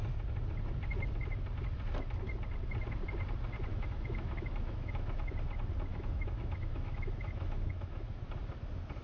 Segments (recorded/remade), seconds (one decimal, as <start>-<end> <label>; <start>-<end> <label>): 0.0-3.7 recorded; 3.7-5.3 remade; 5.3-5.9 recorded; 5.9-8.2 remade; 8.2-9.0 recorded